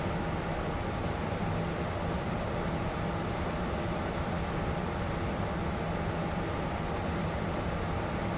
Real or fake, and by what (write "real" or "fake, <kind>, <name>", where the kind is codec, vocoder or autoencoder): real